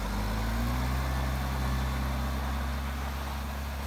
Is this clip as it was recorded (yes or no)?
yes